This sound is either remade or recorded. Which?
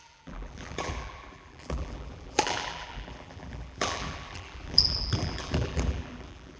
remade